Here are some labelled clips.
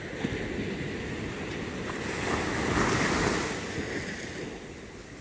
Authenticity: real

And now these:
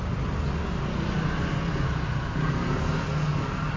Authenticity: real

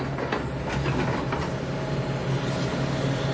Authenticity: real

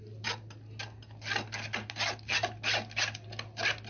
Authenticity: real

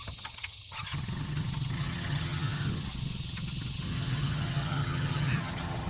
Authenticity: fake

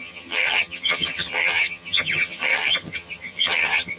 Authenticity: fake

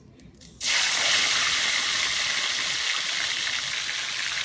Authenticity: real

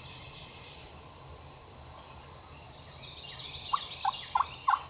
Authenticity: real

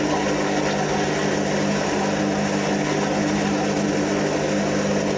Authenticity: real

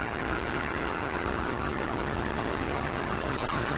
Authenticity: fake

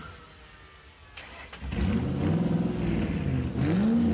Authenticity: real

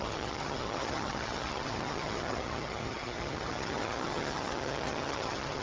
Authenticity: fake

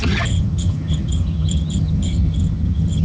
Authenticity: fake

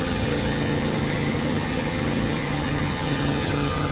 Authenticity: fake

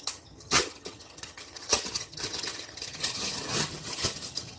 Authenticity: fake